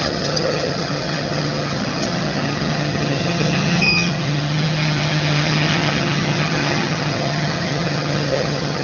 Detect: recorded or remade remade